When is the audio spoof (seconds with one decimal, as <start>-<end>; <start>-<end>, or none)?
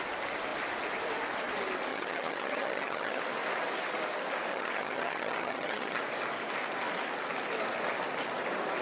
1.9-3.2; 4.5-6.0